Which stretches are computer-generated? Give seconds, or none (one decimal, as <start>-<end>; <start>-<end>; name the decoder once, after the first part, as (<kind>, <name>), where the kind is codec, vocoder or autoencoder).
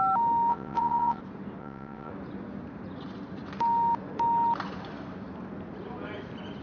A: 0.5-1.2 (vocoder, WaveNeXt); 1.6-2.1